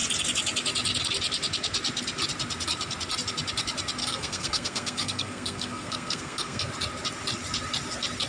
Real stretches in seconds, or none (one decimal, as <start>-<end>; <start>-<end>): 0.0-4.0; 6.7-8.3